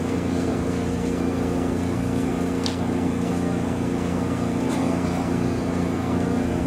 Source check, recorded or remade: remade